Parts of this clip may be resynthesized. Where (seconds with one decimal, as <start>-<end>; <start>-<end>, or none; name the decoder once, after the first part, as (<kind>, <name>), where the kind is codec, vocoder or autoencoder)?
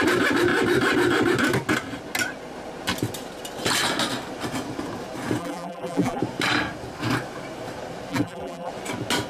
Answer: 5.4-6.2 (vocoder, BigVGAN v2); 8.1-8.7